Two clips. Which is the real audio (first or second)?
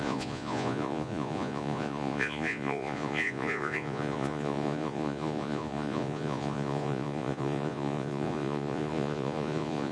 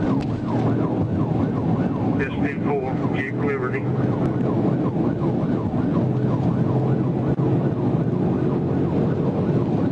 second